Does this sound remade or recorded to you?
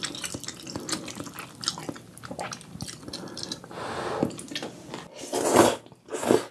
recorded